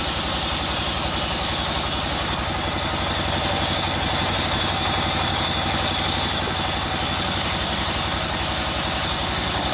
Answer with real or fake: real